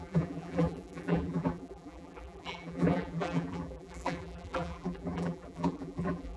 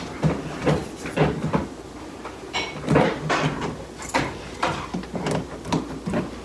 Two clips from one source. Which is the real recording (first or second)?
second